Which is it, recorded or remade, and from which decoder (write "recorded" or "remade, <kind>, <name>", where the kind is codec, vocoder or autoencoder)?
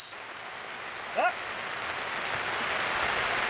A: recorded